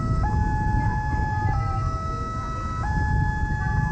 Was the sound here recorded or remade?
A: recorded